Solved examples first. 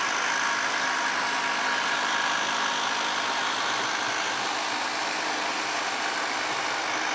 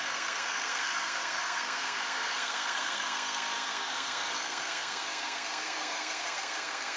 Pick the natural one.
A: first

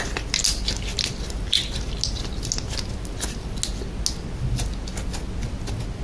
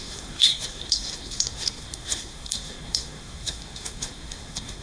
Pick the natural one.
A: first